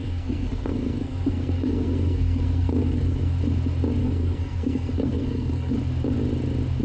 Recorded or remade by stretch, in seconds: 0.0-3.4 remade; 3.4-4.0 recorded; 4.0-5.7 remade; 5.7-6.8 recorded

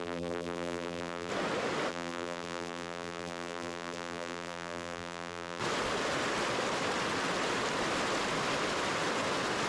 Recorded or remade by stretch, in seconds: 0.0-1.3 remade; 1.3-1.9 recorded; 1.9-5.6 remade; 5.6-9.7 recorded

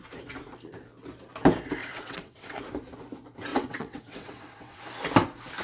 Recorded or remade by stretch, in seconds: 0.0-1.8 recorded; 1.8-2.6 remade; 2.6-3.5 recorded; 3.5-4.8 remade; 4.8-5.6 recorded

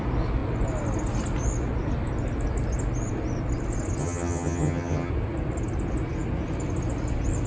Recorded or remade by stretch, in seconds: 0.0-4.0 recorded; 4.0-5.1 remade; 5.1-7.5 recorded